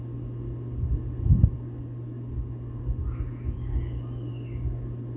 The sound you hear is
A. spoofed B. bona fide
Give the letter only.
B